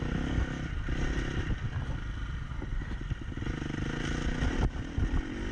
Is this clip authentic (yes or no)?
yes